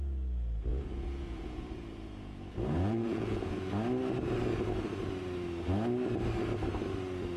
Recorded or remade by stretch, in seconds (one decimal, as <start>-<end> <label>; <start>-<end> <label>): 0.0-0.7 recorded; 0.7-3.7 remade; 3.7-7.4 recorded